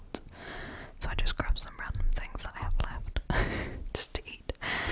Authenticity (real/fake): real